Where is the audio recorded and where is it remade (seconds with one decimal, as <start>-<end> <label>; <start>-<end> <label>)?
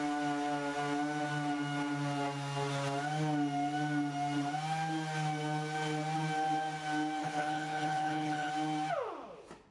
0.0-7.2 recorded; 7.2-8.5 remade; 8.5-9.7 recorded